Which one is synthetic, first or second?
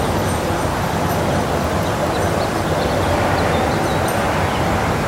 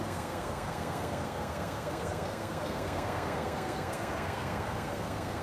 second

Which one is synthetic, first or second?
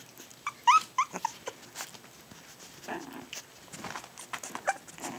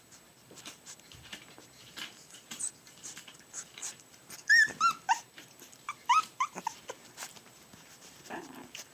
second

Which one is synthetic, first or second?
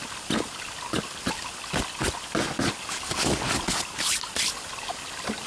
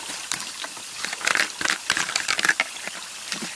second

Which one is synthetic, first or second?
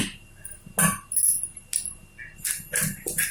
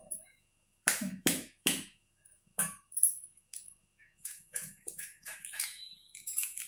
second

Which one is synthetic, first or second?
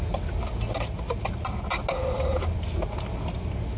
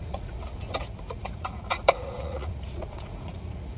second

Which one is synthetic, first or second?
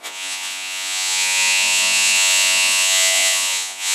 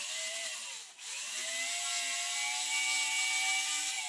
first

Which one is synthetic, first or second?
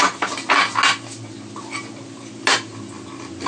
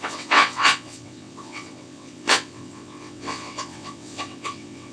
second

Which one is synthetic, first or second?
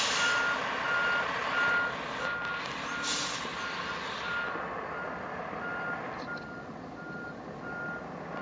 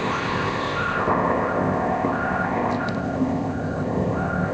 second